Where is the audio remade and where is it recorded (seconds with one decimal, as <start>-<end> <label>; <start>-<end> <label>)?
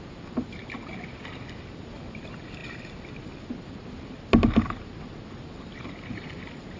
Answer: 0.0-6.8 recorded